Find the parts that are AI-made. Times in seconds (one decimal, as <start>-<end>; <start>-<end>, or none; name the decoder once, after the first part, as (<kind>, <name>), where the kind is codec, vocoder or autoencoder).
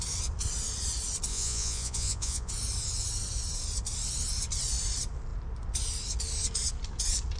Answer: 1.3-2.5 (vocoder, Vocos)